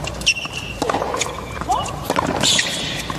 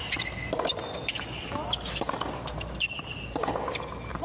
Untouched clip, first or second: second